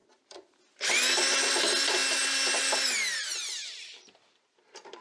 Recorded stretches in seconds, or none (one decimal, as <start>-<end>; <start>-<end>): 0.0-1.5; 2.0-2.6